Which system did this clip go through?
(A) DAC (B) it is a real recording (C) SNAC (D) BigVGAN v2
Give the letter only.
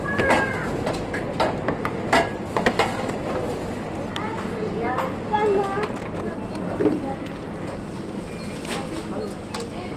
B